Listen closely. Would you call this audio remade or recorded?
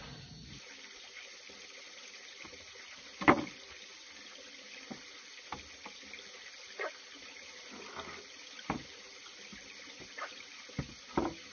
recorded